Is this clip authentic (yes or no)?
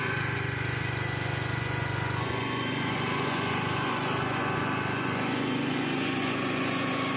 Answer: no